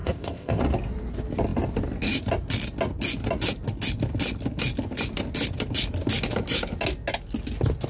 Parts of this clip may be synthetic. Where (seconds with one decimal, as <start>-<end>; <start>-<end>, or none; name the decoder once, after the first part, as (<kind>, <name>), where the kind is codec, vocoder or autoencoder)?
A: 0.0-0.6 (codec, ZipCodec)